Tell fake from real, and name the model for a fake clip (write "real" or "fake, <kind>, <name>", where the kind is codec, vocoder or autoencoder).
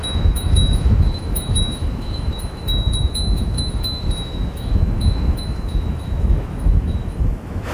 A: fake, autoencoder, DAC-VAE